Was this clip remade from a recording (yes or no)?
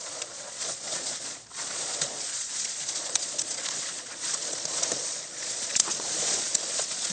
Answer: yes